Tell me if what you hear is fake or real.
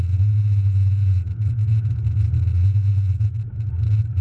real